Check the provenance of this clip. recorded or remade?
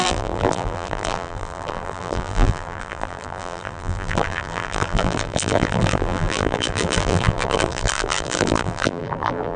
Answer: remade